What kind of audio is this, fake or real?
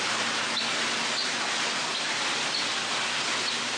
real